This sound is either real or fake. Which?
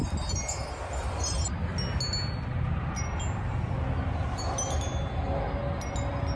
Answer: real